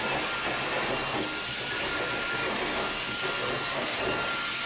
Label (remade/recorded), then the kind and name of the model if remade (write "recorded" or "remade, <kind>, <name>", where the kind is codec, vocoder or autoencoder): recorded